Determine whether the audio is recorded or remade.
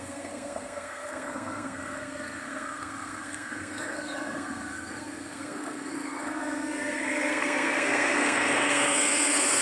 remade